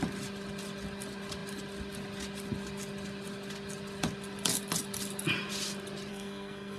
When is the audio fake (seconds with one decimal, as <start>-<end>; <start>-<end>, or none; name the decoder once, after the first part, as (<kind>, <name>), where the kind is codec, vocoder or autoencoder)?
6.1-6.8 (codec, SNAC)